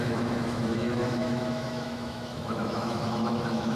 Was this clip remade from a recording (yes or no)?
yes